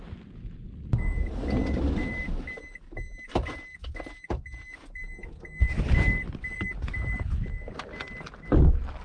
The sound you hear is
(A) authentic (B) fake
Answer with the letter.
A